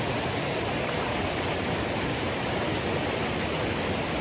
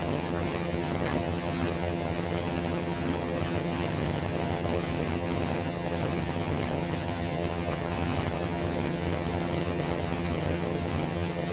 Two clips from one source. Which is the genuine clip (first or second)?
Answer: first